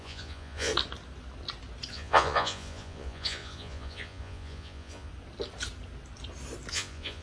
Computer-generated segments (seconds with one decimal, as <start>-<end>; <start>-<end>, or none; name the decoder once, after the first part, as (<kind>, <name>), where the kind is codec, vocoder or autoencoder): 0.0-0.7 (vocoder, Vocos); 1.9-5.1; 6.7-7.2